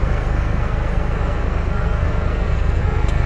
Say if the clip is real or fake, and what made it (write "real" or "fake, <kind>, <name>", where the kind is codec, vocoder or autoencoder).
fake, codec, SNAC